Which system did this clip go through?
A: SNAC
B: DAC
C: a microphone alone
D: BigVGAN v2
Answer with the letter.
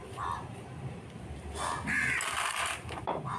C